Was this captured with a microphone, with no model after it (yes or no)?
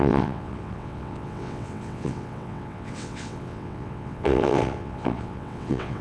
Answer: no